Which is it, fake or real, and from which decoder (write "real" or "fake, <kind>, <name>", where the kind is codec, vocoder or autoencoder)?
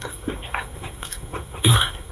fake, codec, SNAC